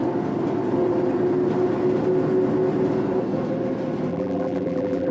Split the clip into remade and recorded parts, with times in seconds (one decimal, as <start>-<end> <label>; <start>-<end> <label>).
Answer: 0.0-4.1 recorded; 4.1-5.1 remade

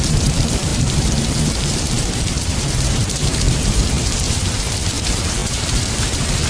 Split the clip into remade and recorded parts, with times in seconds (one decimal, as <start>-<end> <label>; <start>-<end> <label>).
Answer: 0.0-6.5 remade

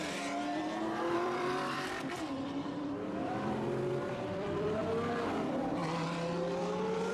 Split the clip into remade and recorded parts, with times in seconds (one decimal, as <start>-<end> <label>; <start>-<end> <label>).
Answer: 0.0-4.8 remade; 4.8-6.6 recorded; 6.6-7.1 remade